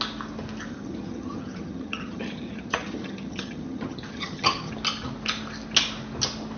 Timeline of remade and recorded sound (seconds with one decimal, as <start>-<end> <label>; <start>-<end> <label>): 0.0-0.7 recorded; 0.7-4.7 remade; 4.7-6.6 recorded